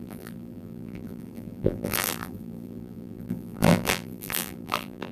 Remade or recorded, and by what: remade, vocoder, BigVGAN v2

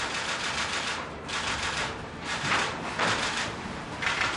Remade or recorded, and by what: remade, vocoder, BigVGAN v2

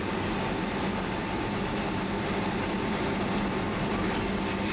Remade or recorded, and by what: recorded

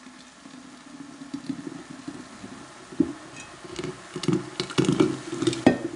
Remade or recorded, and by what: recorded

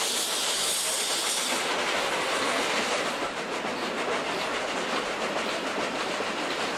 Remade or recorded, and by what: recorded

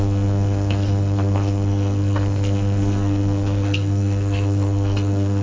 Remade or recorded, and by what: remade, codec, SNAC